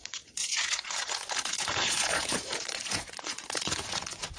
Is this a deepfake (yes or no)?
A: yes